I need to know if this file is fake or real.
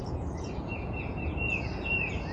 fake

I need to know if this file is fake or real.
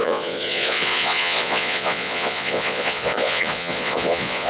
fake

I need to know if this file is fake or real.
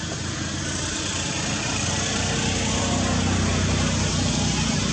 real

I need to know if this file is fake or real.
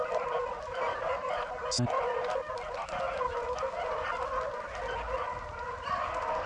real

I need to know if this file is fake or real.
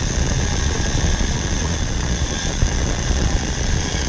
fake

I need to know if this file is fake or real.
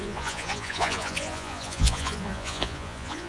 fake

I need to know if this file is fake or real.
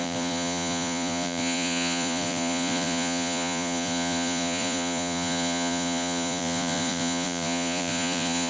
fake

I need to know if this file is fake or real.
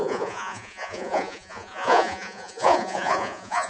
fake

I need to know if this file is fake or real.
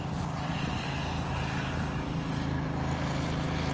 real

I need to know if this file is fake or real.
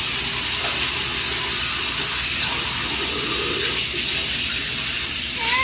real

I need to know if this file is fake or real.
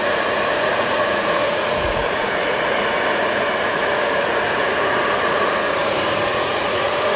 fake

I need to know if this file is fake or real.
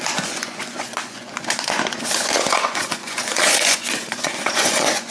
fake